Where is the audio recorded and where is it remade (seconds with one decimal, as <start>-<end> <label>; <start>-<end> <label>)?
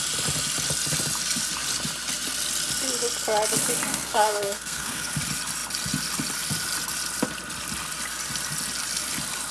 0.0-3.9 recorded; 3.9-5.1 remade; 5.1-9.5 recorded